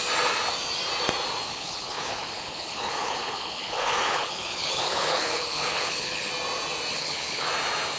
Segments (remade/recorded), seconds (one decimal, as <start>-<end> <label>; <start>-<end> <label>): 0.0-1.5 recorded; 1.5-6.3 remade; 6.3-6.9 recorded; 6.9-7.5 remade; 7.5-8.0 recorded